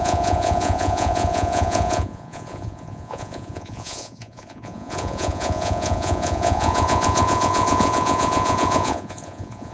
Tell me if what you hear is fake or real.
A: fake